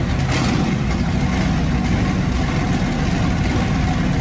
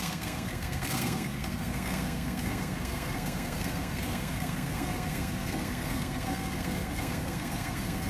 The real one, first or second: first